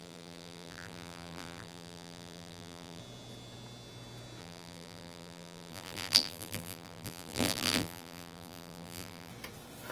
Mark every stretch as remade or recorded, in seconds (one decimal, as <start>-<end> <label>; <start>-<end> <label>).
0.0-3.0 remade; 3.0-4.4 recorded; 4.4-9.3 remade; 9.3-9.9 recorded